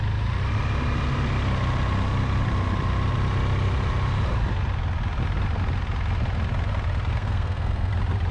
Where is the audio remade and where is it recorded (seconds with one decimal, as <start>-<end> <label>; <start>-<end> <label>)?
0.0-7.1 recorded; 7.1-7.9 remade; 7.9-8.3 recorded